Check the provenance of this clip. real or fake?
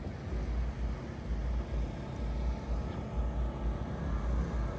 real